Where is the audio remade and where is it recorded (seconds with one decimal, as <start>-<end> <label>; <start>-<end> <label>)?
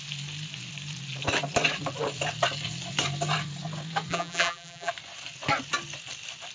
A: 0.0-4.1 recorded; 4.1-4.9 remade; 4.9-6.5 recorded